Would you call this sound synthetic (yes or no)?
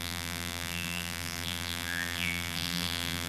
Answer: yes